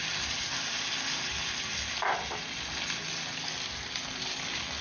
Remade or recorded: recorded